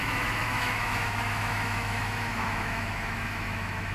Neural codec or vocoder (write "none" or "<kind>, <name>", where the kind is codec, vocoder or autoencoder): autoencoder, DAC-VAE